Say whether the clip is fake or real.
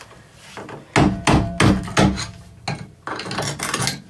real